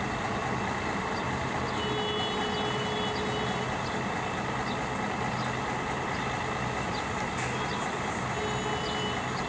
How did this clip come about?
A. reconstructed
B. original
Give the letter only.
B